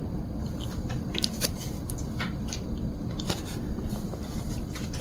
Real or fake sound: fake